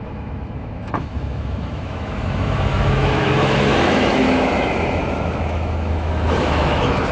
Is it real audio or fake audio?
fake